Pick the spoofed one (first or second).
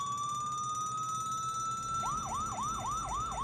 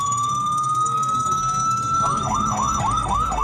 second